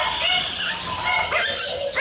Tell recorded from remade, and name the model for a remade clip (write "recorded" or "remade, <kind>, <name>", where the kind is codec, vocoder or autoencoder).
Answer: recorded